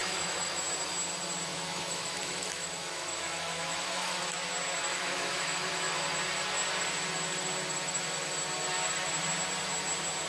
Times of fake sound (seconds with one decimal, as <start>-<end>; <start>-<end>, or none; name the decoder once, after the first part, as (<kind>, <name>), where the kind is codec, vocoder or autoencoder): 0.0-0.6 (autoencoder, DAC-VAE); 1.5-4.2; 4.9-6.0